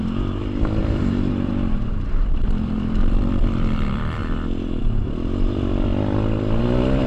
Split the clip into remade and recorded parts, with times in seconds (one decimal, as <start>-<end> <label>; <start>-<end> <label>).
0.0-4.2 remade; 4.2-4.8 recorded; 4.8-5.9 remade; 5.9-6.6 recorded; 6.6-7.1 remade